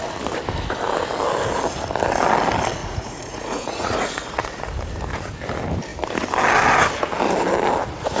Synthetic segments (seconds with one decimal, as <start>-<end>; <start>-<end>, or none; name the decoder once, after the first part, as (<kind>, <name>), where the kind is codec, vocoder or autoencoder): 2.8-4.7 (vocoder, Vocos)

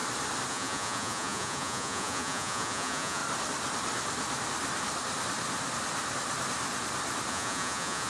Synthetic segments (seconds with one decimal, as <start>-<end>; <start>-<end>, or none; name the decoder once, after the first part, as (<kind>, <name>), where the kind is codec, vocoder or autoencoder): 0.5-3.2 (vocoder, Vocos); 7.3-8.1

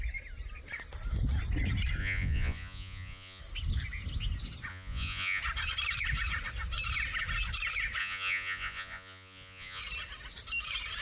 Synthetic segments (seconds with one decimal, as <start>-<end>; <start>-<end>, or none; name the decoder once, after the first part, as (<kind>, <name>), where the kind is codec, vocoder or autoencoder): 2.0-3.4 (vocoder, Vocos); 4.7-5.4; 8.0-9.8

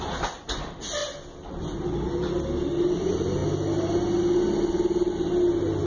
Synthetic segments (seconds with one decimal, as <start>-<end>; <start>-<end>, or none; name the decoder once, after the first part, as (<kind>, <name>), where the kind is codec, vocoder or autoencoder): none

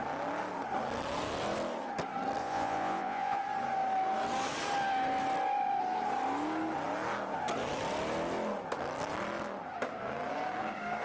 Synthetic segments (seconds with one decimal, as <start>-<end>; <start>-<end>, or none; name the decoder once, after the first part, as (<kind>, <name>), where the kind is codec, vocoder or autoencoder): 2.4-3.4 (vocoder, Vocos)